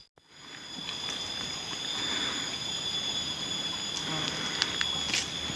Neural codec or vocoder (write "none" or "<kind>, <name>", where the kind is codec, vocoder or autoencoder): none